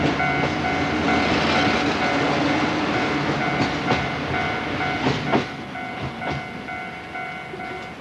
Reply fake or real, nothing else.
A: real